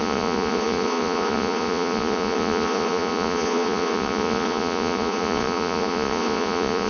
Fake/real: fake